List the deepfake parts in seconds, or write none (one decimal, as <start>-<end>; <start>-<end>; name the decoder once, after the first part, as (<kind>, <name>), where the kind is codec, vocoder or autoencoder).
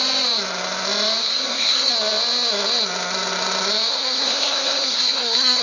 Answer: 1.2-1.9 (codec, SNAC); 3.9-5.6